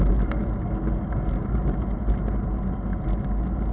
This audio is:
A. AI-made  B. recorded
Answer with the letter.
B